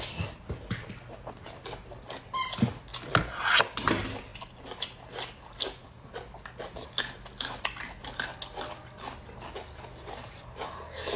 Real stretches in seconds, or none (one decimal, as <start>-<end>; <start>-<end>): 0.0-11.2